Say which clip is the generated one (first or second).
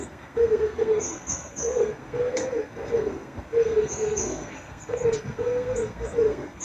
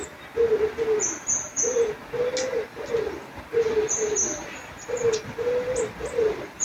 first